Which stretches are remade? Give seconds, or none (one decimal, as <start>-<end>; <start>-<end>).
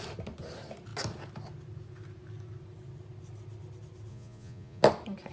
4.1-4.8